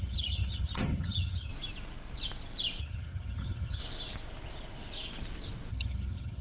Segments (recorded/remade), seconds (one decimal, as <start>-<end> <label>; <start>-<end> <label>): 0.0-1.5 remade; 1.5-2.8 recorded; 2.8-3.8 remade; 3.8-5.7 recorded; 5.7-6.4 remade